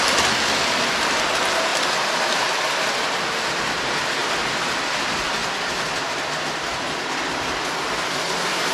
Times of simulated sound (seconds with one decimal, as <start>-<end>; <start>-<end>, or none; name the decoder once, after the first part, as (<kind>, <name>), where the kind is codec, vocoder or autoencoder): 0.0-8.7 (vocoder, BigVGAN v2)